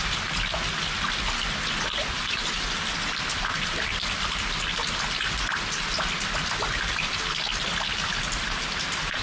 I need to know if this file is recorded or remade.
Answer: recorded